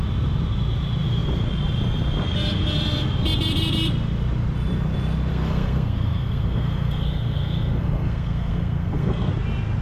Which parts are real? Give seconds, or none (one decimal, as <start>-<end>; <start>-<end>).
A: 0.0-5.3; 9.3-9.8